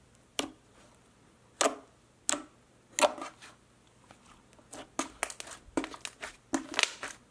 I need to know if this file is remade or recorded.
recorded